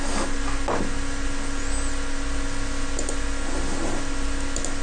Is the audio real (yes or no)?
yes